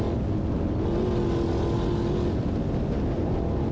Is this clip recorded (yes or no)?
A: yes